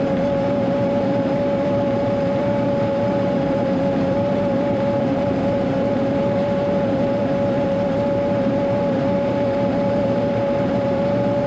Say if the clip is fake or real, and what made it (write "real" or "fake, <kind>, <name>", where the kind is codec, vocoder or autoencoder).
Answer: fake, vocoder, BigVGAN v2